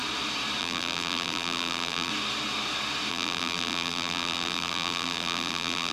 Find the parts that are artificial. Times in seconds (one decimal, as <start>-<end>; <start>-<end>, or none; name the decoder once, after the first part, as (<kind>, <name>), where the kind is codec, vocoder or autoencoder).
0.6-2.1 (vocoder, BigVGAN v2); 3.1-5.9